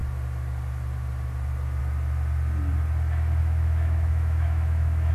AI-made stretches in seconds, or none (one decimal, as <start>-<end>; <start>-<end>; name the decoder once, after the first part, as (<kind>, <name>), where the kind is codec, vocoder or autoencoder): 3.4-5.1 (autoencoder, DAC-VAE)